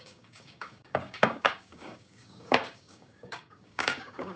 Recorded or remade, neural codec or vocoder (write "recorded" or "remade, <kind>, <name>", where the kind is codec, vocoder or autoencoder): remade, codec, DAC